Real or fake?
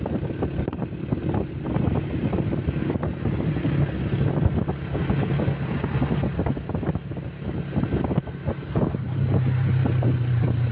real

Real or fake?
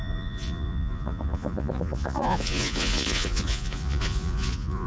fake